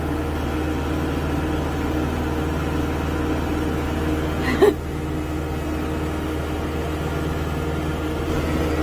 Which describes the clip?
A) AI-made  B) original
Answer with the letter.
B